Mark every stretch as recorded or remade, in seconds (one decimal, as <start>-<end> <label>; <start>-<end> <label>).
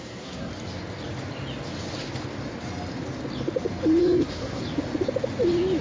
0.0-0.5 remade; 0.5-4.0 recorded; 4.0-4.6 remade; 4.6-5.8 recorded